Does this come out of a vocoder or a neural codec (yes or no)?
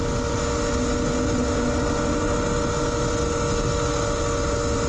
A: no